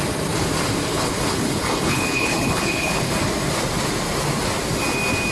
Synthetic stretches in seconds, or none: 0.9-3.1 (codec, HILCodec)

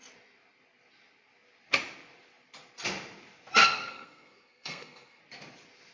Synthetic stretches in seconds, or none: 3.6-5.2 (codec, SNAC)

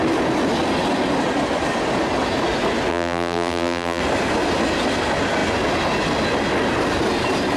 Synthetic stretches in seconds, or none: 2.9-4.0 (vocoder, BigVGAN v2)

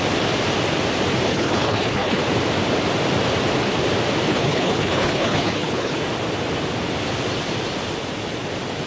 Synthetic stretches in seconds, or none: 1.3-2.2 (codec, HILCodec); 4.3-6.0

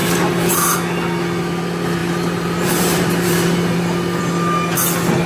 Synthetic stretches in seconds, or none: 0.0-0.5 (vocoder, BigVGAN v2); 2.0-4.2

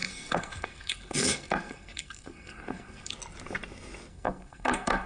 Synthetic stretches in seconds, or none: 0.0-3.1 (codec, SNAC); 4.1-5.1

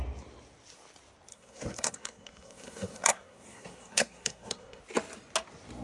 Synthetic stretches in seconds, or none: 1.3-4.8 (codec, SNAC)

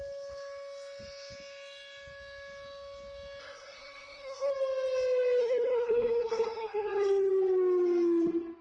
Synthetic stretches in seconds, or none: 3.4-4.5 (codec, SNAC); 5.4-7.3